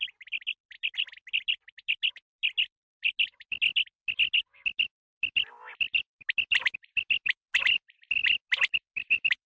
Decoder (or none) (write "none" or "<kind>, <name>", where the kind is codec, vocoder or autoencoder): none